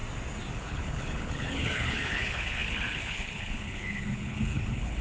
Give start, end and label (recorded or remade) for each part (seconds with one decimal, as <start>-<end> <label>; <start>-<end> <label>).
0.0-0.5 recorded; 0.5-5.0 remade